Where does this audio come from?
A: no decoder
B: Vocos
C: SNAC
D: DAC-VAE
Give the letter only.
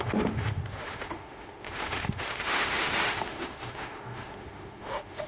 D